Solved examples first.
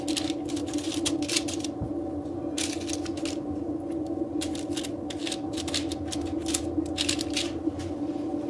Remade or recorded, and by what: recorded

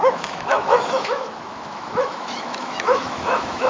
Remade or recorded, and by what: remade, autoencoder, DAC-VAE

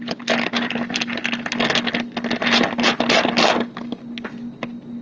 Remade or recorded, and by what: recorded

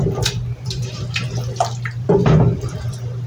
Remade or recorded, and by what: remade, vocoder, BigVGAN v2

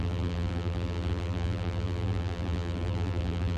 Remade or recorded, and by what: remade, vocoder, BigVGAN v2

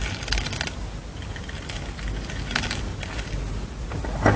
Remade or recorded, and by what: recorded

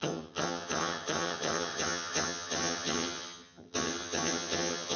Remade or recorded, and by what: remade, vocoder, HiFi-GAN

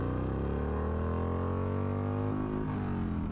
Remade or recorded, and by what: recorded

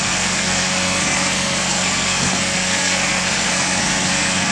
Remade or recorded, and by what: remade, codec, SNAC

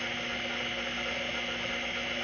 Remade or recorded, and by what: recorded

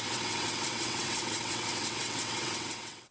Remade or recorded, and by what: remade, vocoder, WaveNeXt